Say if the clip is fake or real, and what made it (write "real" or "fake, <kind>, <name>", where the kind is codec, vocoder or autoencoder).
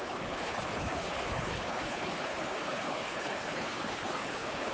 fake, codec, HILCodec